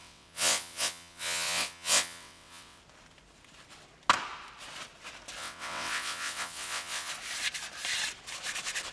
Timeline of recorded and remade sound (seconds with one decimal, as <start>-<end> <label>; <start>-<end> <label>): 0.0-2.8 remade; 2.8-5.4 recorded; 5.4-7.1 remade; 7.1-8.9 recorded